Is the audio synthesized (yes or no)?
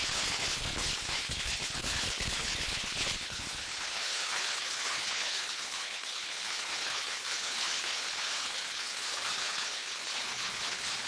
yes